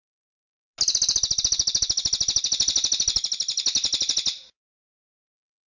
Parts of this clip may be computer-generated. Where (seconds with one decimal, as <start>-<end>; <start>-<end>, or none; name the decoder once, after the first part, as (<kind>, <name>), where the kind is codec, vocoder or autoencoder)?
none